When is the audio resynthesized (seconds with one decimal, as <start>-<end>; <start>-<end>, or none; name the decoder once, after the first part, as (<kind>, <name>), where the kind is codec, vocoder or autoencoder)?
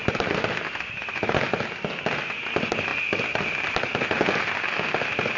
none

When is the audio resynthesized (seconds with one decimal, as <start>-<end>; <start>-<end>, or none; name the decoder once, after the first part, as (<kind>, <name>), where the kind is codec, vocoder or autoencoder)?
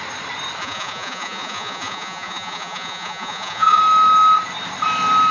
0.6-3.8 (vocoder, Vocos)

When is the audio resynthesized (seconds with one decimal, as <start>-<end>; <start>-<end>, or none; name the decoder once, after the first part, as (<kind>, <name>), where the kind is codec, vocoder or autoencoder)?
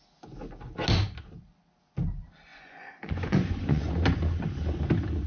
2.5-3.9 (vocoder, Vocos)